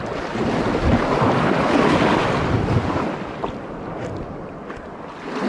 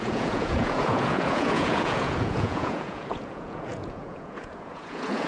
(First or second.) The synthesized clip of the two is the second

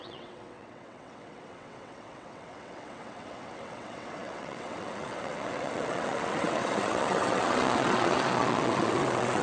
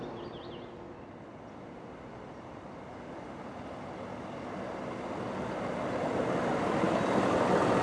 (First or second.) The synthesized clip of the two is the first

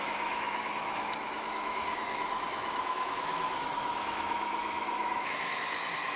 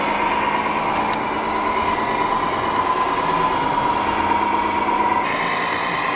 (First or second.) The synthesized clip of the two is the first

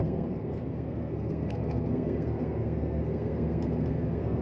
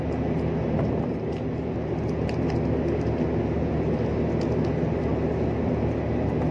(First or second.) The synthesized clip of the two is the first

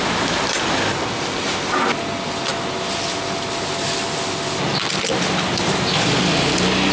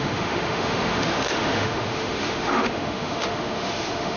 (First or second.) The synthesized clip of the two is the second